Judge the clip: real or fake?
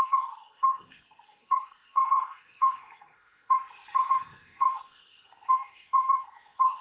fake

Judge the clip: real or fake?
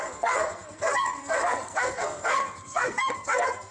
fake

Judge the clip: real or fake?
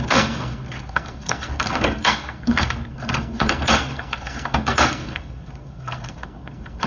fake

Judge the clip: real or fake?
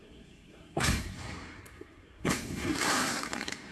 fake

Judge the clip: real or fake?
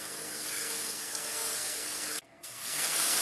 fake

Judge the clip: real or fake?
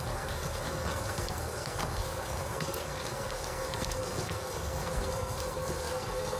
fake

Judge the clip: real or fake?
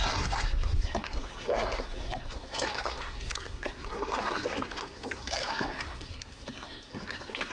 fake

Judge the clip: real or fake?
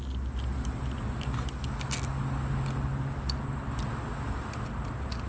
real